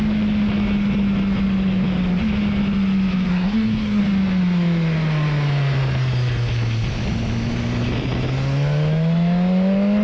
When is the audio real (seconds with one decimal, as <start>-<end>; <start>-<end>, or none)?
0.0-3.3; 4.0-10.0